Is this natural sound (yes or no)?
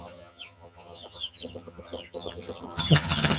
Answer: no